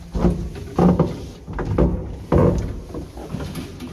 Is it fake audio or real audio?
real